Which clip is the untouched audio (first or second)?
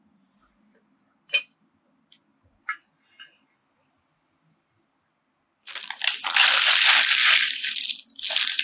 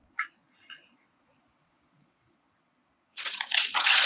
first